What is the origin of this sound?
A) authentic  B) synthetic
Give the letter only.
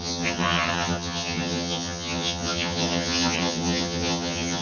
B